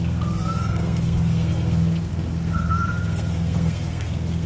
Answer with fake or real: fake